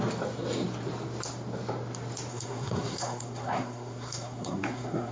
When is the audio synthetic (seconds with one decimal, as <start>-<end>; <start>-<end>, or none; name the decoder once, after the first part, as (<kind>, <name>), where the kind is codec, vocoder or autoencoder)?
2.3-5.1 (codec, SNAC)

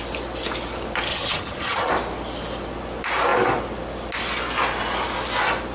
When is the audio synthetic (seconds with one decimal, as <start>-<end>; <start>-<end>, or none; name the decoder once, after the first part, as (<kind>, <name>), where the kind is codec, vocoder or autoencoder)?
1.1-1.9 (vocoder, HiFi-GAN)

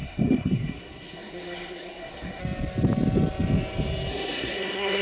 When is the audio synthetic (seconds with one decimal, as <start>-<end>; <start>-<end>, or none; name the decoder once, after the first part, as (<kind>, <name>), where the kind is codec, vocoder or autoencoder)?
0.0-2.4 (codec, SNAC); 4.1-5.0